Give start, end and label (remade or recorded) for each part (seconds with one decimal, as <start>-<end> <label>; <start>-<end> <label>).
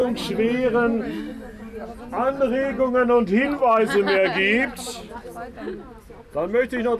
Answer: 0.0-7.0 recorded